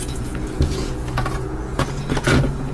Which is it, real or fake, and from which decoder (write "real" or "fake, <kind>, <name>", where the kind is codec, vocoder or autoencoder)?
fake, vocoder, Vocos